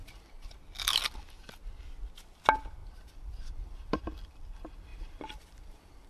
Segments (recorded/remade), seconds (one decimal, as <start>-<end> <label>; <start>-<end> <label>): 0.0-0.6 remade; 0.6-2.8 recorded; 2.8-4.0 remade; 4.0-4.9 recorded; 4.9-6.1 remade